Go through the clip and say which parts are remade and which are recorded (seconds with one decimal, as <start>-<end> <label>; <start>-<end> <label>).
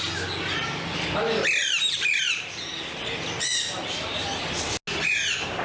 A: 0.0-1.6 recorded; 1.6-2.7 remade; 2.7-3.5 recorded; 3.5-4.4 remade; 4.4-5.6 recorded